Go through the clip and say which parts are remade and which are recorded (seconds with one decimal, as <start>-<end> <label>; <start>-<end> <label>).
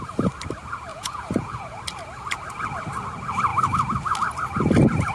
0.0-0.9 recorded; 0.9-1.8 remade; 1.8-5.1 recorded